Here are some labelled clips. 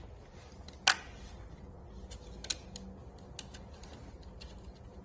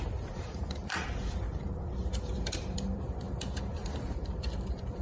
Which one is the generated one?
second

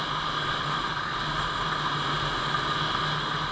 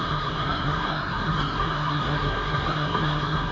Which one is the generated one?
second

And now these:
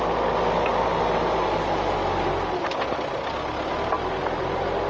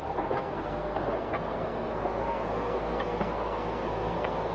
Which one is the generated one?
second